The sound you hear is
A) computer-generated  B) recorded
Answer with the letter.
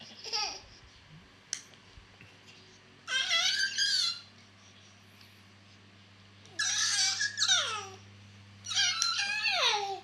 B